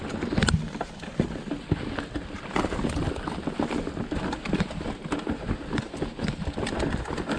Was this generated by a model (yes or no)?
no